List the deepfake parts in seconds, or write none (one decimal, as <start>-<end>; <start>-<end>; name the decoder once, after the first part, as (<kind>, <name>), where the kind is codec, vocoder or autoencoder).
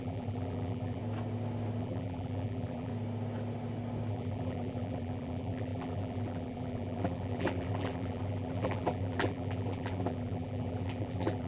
0.0-1.0 (vocoder, BigVGAN v2); 1.8-2.9; 4.1-11.5